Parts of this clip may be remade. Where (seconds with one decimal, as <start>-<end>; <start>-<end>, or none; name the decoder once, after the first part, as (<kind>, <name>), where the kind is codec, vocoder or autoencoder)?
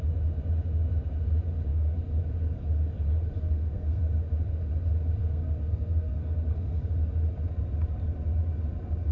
1.7-2.2 (codec, SNAC); 3.4-4.0; 5.2-6.8